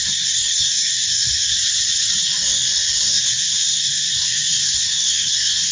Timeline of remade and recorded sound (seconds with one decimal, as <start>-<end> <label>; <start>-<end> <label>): 0.0-1.5 remade; 1.5-2.2 recorded; 2.2-5.7 remade